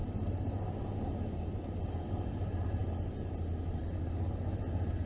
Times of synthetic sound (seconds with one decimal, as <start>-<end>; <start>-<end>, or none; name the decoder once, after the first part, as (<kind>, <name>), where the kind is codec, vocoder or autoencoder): none